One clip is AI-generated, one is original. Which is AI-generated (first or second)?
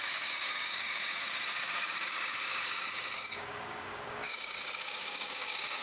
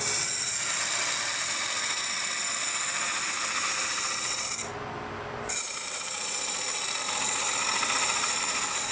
first